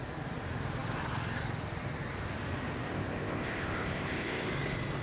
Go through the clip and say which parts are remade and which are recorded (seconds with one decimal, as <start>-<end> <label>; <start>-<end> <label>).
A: 0.0-2.9 recorded; 2.9-4.5 remade; 4.5-5.0 recorded